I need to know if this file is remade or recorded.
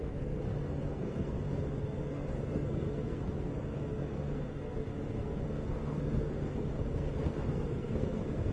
remade